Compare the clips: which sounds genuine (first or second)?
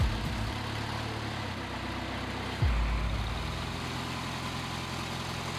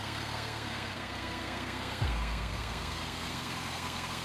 first